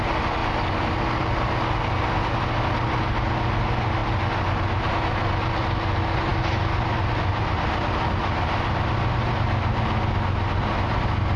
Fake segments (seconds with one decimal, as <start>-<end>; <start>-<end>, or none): none